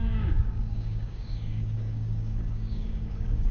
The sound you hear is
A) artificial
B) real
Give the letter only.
A